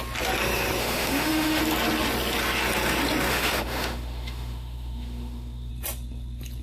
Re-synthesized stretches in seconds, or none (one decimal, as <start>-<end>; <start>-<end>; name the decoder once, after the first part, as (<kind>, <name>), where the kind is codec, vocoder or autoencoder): 0.8-1.6 (autoencoder, DAC-VAE); 3.3-5.7